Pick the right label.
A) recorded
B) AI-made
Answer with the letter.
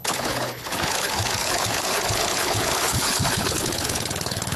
B